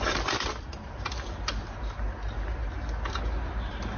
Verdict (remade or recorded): recorded